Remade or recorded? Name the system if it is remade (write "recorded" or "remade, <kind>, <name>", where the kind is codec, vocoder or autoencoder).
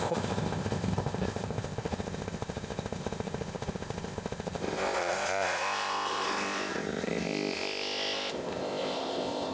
remade, codec, ZipCodec